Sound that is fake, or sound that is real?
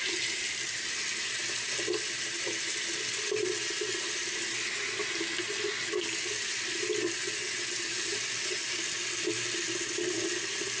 real